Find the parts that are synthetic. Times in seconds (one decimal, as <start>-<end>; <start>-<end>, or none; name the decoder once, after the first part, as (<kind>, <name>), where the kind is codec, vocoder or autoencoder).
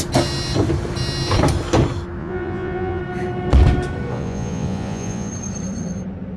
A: 2.2-3.0 (vocoder, Vocos); 4.1-5.3